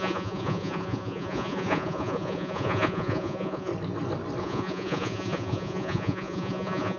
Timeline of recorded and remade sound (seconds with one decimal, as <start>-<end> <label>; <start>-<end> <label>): 0.0-3.7 remade; 3.7-4.4 recorded; 4.4-7.0 remade